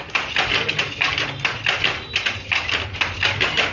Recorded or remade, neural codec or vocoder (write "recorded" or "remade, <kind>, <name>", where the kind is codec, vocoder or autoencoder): recorded